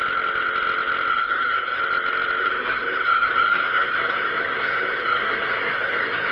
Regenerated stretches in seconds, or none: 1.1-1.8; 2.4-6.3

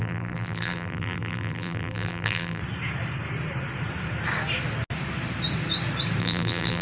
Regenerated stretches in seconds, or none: 0.0-2.6; 6.2-6.8

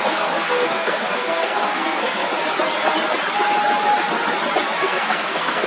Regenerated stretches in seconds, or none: 0.0-2.3; 4.8-5.7

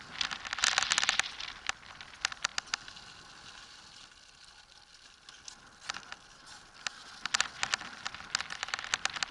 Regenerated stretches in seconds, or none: none

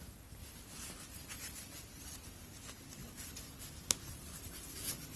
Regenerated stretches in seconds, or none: 0.4-2.1; 3.0-3.6; 4.1-5.2

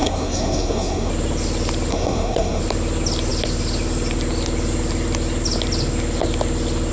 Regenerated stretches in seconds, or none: 0.0-1.1; 1.9-2.6